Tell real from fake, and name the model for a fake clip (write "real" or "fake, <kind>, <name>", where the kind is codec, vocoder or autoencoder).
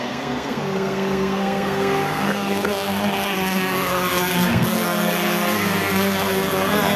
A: fake, codec, SNAC